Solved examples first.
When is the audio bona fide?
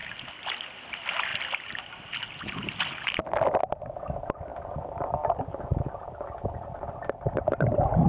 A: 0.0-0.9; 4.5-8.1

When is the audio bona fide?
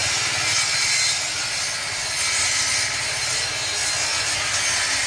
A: 0.0-5.1